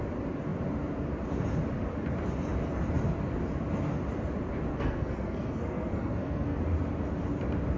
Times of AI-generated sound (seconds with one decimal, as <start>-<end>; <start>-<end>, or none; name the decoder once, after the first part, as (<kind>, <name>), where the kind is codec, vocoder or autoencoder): 4.7-6.6 (codec, SNAC)

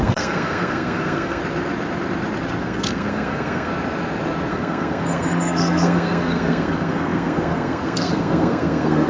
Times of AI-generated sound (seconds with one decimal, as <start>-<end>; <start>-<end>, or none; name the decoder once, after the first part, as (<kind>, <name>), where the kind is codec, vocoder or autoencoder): 0.0-1.4 (codec, SNAC); 2.6-3.7; 4.5-9.1

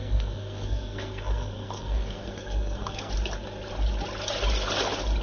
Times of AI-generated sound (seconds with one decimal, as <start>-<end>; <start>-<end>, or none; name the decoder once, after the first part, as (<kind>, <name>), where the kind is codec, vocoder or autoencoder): 0.0-3.1 (codec, SNAC)

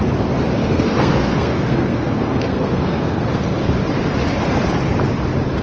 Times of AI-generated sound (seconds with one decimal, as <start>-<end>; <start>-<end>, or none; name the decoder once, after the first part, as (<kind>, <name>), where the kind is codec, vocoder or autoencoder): 0.6-3.6 (codec, SNAC)

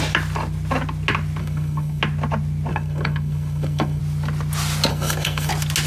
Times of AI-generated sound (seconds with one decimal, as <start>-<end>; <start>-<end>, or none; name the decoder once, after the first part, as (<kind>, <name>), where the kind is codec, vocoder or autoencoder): 1.4-2.0 (codec, SNAC); 2.7-4.0; 4.9-5.5